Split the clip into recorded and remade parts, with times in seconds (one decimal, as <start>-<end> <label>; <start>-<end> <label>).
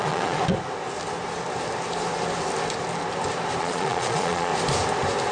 0.0-0.4 remade; 0.4-3.6 recorded; 3.6-4.5 remade; 4.5-5.3 recorded